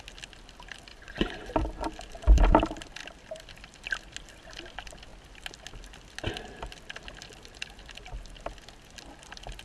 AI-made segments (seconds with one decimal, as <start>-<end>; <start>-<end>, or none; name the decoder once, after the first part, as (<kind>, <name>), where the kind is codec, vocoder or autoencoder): 0.9-1.5 (vocoder, Vocos)